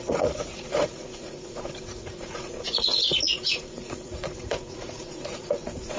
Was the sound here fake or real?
fake